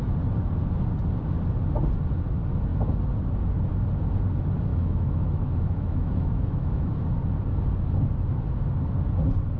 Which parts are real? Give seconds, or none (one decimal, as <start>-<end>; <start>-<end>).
0.0-4.7; 6.9-9.6